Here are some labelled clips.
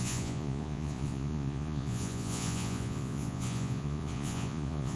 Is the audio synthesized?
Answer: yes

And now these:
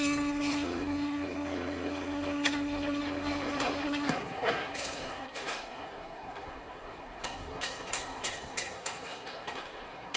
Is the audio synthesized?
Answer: yes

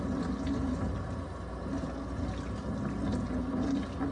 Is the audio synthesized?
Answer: no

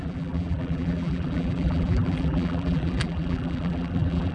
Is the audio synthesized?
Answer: yes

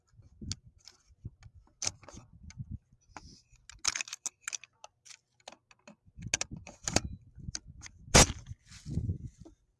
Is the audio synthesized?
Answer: no